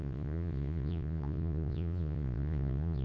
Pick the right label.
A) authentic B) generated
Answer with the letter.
B